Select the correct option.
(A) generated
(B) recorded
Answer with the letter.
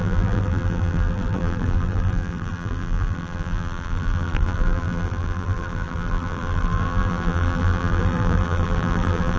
A